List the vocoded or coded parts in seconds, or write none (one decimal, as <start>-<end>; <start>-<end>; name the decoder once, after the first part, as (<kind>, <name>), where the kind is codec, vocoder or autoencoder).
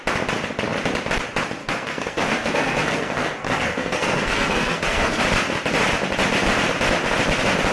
1.6-5.2 (codec, SNAC)